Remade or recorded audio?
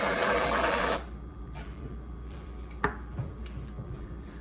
remade